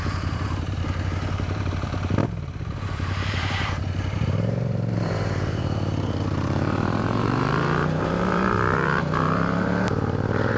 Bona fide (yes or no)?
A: no